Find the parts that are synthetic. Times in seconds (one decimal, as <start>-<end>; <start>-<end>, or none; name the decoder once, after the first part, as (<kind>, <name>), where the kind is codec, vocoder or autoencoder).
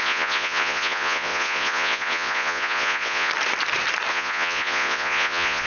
0.0-3.3 (vocoder, Vocos); 4.1-5.7